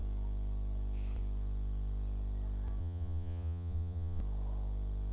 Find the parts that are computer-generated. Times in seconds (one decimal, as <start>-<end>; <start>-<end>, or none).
2.8-4.2